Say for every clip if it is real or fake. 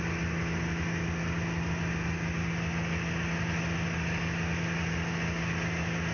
real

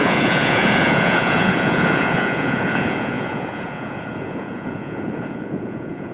fake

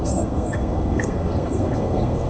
fake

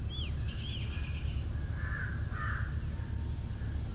real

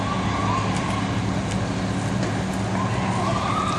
real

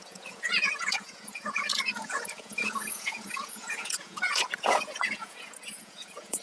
fake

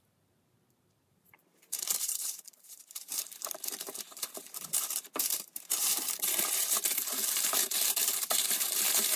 fake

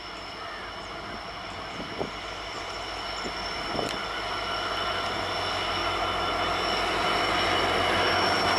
real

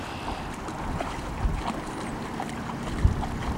real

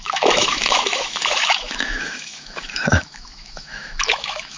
fake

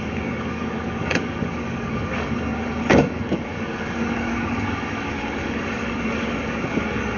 fake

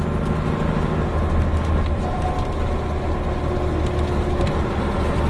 real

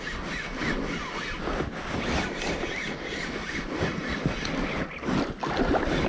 real